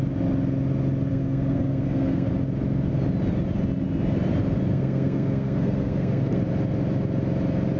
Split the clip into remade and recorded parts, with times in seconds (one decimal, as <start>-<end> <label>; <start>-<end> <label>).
0.0-1.1 recorded; 1.1-2.3 remade; 2.3-4.7 recorded; 4.7-6.4 remade; 6.4-7.8 recorded